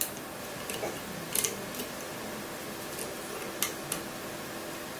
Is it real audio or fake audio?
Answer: real